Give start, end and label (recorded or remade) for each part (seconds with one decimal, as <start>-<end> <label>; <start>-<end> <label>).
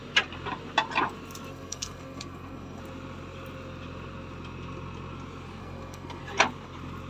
0.0-1.5 recorded; 1.5-2.8 remade; 2.8-5.6 recorded; 5.6-6.2 remade; 6.2-7.1 recorded